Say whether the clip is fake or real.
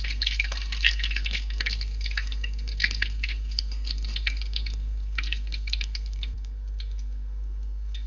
fake